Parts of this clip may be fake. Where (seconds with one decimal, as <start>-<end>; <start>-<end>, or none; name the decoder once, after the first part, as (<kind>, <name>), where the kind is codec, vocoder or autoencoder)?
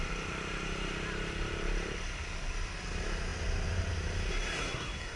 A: 4.3-5.2 (codec, SNAC)